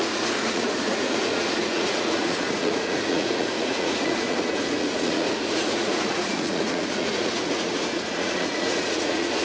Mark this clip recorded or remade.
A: remade